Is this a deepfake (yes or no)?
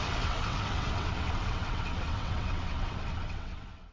yes